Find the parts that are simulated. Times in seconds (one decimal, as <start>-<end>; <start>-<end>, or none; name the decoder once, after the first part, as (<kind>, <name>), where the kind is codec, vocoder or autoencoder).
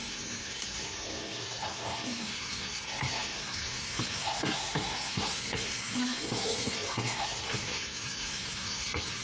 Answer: 0.0-9.2 (codec, SNAC)